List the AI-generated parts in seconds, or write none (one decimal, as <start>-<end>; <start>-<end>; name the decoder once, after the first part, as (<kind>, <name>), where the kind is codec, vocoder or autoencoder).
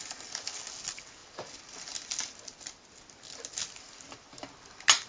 none